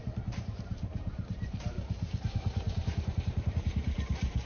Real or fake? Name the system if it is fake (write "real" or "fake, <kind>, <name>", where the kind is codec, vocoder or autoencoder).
fake, vocoder, BigVGAN v2